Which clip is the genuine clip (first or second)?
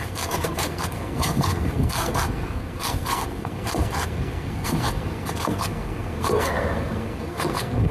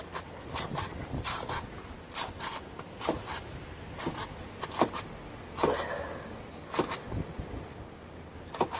second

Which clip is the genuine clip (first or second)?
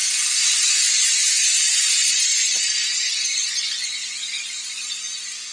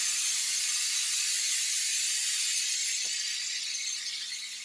first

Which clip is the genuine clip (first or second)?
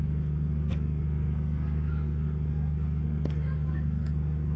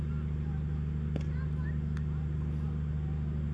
second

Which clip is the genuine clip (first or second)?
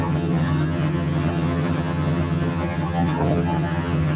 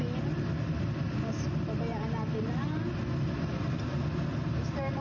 second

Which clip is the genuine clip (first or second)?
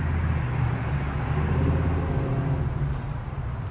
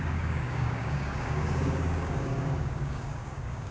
first